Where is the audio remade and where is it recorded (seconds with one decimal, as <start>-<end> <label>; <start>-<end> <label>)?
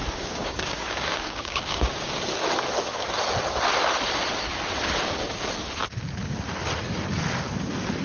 0.0-2.2 remade; 2.2-8.0 recorded